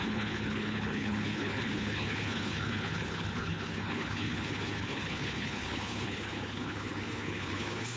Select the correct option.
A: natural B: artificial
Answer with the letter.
B